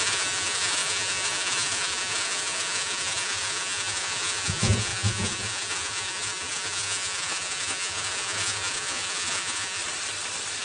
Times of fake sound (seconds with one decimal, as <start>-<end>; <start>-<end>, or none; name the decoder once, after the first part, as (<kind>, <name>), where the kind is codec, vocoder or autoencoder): 0.0-9.8 (vocoder, Vocos)